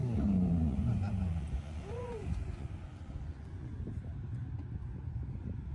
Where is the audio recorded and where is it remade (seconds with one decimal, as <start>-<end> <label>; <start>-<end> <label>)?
0.0-3.7 remade; 3.7-5.7 recorded